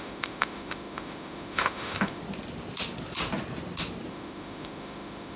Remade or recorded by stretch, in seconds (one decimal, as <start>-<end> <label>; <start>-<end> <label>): 0.0-2.2 remade; 2.2-4.1 recorded; 4.1-5.4 remade